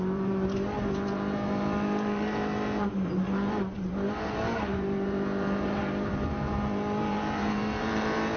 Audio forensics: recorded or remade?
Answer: remade